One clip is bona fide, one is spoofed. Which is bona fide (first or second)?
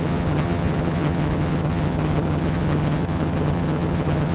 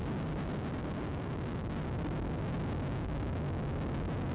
second